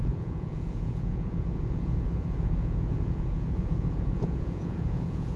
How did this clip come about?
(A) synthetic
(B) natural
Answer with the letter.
A